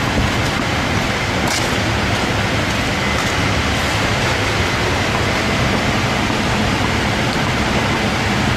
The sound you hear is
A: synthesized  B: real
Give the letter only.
B